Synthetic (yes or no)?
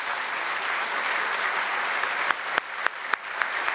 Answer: no